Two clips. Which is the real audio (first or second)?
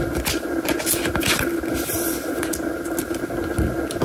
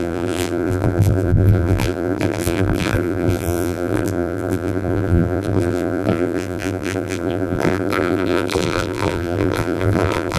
first